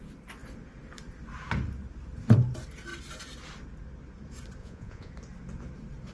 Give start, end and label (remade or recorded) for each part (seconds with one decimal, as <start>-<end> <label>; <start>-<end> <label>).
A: 0.0-4.6 recorded; 4.6-5.1 remade; 5.1-6.1 recorded